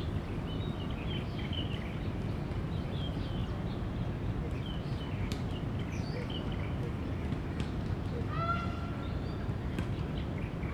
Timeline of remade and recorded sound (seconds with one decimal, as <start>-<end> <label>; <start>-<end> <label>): 0.0-10.7 recorded